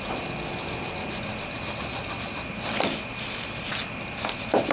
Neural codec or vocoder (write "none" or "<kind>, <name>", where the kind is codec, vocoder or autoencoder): none